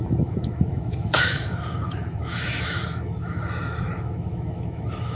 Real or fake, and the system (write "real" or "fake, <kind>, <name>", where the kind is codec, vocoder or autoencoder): fake, autoencoder, DAC-VAE